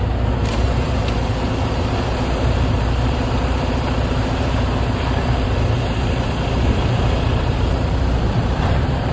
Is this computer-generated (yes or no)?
yes